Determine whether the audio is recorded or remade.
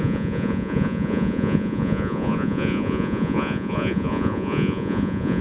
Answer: remade